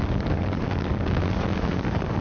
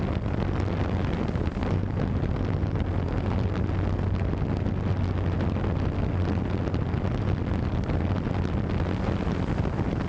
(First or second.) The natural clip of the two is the second